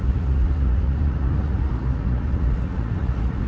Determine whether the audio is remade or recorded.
remade